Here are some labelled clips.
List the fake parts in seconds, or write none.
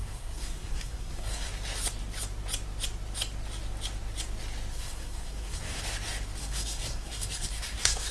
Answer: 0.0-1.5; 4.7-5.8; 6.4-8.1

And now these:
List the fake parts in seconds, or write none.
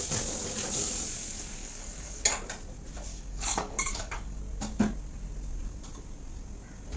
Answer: 1.6-2.2; 3.1-4.4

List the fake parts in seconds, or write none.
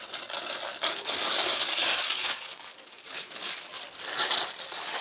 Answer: 0.7-3.7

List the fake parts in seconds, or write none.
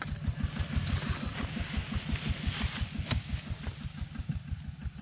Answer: none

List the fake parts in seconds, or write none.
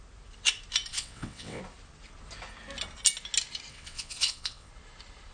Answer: 0.9-1.6; 3.7-4.7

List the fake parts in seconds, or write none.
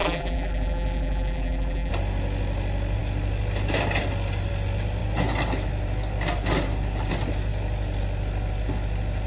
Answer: 0.0-1.9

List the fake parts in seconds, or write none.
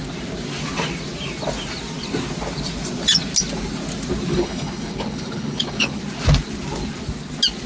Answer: 4.3-6.0